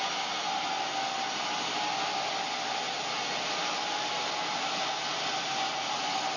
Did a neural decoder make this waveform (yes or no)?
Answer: no